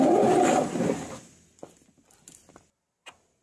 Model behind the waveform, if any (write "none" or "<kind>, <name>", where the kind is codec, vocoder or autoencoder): none